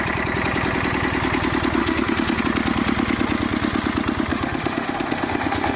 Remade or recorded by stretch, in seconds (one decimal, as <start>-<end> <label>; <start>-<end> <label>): 0.0-1.8 recorded; 1.8-2.4 remade; 2.4-4.3 recorded; 4.3-5.8 remade